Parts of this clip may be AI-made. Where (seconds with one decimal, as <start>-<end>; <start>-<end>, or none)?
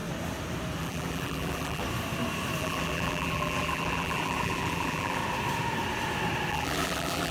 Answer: 0.8-1.8; 2.6-5.2; 6.5-7.3